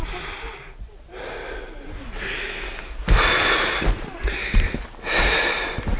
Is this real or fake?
real